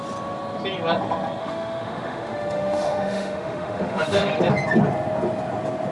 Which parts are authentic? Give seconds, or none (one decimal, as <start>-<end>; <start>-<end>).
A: 0.0-1.4; 4.4-5.9